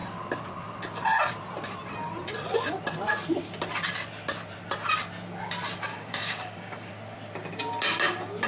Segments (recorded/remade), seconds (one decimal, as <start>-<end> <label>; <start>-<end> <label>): 0.0-5.9 recorded; 5.9-6.9 remade; 6.9-8.5 recorded